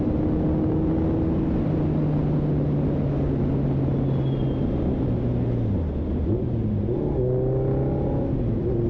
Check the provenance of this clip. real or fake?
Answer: real